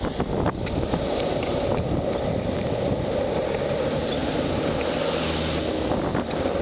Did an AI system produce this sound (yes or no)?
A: no